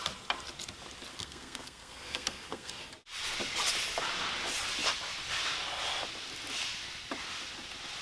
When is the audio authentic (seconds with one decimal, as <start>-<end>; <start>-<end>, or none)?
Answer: 0.0-1.1; 2.8-8.0